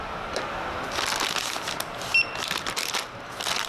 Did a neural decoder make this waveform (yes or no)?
yes